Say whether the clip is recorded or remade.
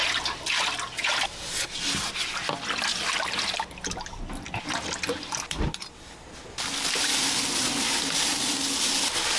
recorded